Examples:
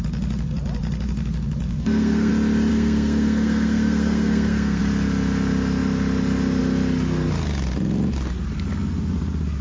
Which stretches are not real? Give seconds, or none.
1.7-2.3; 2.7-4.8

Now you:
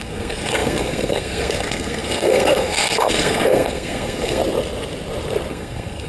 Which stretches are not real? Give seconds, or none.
0.0-4.4; 5.5-6.1

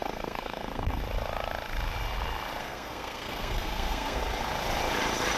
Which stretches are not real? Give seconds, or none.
0.0-1.0; 2.6-4.2

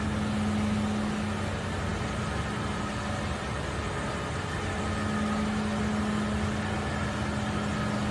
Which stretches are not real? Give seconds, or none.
none

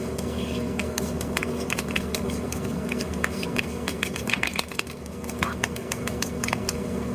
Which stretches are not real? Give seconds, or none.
0.0-7.1

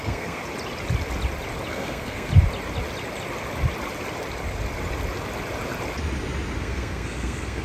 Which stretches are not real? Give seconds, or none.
0.0-0.4; 1.7-2.3; 6.6-7.6

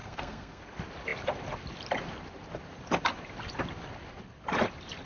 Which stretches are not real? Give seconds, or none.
0.0-0.6

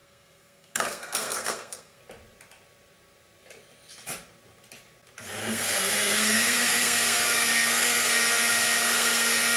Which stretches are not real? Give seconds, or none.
0.0-2.0; 5.4-9.6